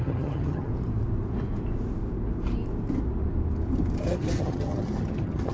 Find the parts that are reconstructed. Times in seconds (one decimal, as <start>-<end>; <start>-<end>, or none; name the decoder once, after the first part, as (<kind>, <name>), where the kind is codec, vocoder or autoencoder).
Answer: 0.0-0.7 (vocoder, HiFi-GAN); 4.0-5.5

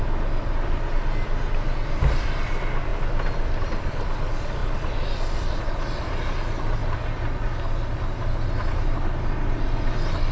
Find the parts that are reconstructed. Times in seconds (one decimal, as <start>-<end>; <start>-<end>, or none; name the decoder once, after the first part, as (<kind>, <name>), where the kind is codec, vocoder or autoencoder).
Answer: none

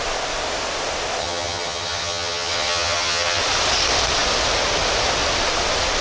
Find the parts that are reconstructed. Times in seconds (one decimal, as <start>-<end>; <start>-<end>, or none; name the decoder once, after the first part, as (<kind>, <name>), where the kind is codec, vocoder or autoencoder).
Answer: 1.2-3.4 (vocoder, HiFi-GAN)

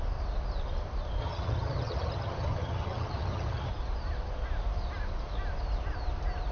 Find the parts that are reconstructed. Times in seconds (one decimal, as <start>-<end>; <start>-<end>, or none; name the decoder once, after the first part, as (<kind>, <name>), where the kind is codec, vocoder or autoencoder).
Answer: 1.2-3.7 (vocoder, HiFi-GAN)

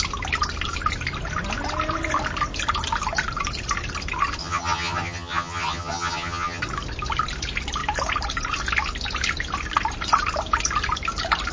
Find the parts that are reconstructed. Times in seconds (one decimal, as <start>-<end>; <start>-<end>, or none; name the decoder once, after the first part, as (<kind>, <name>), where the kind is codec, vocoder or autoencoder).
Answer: 4.4-6.6 (vocoder, HiFi-GAN)

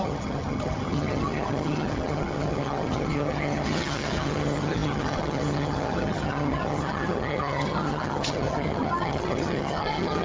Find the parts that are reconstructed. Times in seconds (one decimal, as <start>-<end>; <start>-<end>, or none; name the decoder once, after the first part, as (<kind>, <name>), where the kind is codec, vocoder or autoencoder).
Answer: 0.0-10.2 (vocoder, HiFi-GAN)

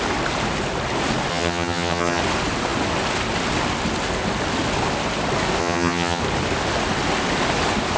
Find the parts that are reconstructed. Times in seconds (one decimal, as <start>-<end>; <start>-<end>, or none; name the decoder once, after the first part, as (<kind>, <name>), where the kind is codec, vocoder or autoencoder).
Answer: 1.3-2.2 (vocoder, HiFi-GAN); 5.6-6.2